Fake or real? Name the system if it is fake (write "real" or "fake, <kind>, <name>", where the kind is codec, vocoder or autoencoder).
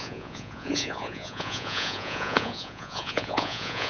fake, vocoder, Vocos